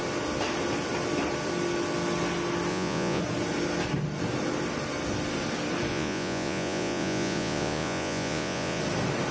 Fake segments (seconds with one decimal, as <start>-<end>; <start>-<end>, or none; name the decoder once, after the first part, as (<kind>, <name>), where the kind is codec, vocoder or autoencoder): 2.7-3.2 (vocoder, Vocos); 5.9-8.8